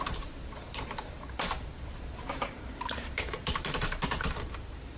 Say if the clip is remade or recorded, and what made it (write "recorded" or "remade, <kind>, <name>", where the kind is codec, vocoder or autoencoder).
remade, vocoder, BigVGAN v2